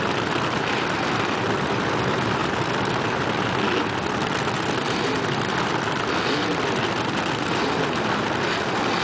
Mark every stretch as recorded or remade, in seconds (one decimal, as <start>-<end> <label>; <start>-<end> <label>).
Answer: 0.0-9.0 recorded